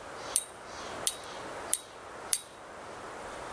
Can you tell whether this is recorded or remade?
recorded